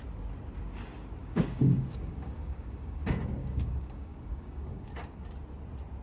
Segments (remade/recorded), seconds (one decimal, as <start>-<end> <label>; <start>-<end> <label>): 0.0-1.2 recorded; 1.2-3.0 remade; 3.0-3.4 recorded; 3.4-4.9 remade; 4.9-6.0 recorded